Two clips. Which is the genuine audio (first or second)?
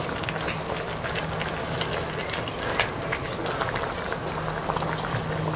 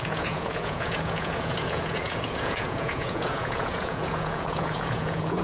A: first